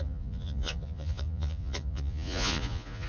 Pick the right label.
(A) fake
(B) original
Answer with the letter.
A